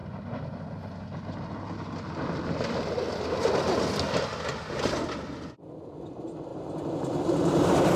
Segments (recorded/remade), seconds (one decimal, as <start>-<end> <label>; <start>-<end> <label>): 0.0-6.5 recorded; 6.5-8.0 remade